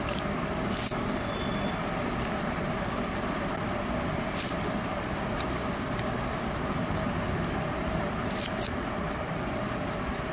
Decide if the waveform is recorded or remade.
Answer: remade